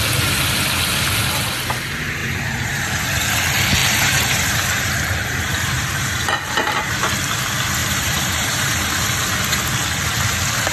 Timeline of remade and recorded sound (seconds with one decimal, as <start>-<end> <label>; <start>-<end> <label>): 0.0-2.2 recorded; 2.2-2.8 remade; 2.8-3.8 recorded; 3.8-6.7 remade; 6.7-7.8 recorded; 7.8-8.9 remade; 8.9-10.7 recorded